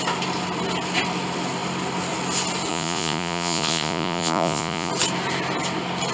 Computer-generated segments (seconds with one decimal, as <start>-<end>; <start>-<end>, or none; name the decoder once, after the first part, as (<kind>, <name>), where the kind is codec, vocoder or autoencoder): 2.7-4.9 (vocoder, Vocos)